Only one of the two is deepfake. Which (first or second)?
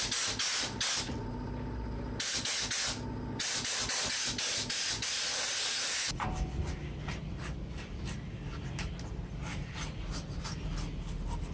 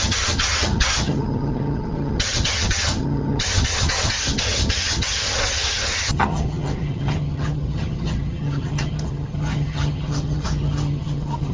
second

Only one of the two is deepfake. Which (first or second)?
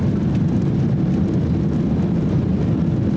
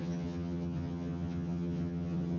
second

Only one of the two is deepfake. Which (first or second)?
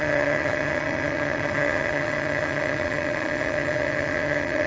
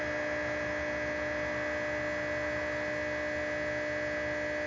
first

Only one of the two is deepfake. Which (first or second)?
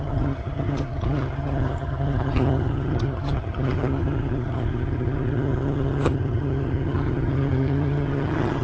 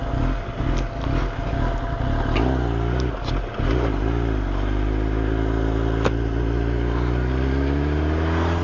first